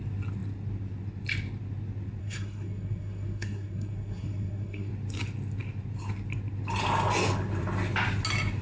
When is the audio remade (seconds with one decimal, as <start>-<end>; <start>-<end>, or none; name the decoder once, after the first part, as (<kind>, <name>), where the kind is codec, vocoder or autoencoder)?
2.2-4.9 (codec, SNAC)